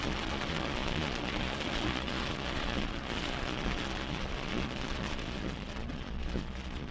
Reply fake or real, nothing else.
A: fake